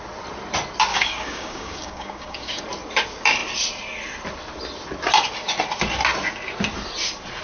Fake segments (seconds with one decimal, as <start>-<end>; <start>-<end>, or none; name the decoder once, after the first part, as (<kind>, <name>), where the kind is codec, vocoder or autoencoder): 0.9-2.6 (codec, DAC)